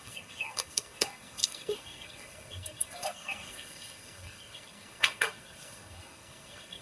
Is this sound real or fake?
fake